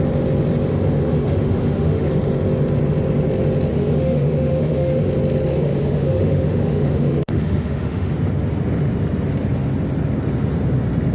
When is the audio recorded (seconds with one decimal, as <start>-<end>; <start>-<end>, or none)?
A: 0.0-0.7; 2.1-3.7; 5.1-5.5; 8.1-11.1